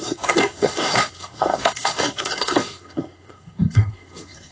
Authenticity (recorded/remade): remade